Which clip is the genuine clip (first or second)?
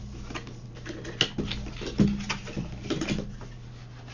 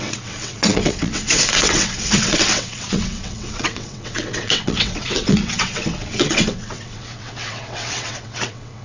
first